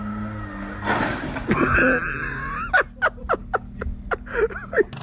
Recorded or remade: recorded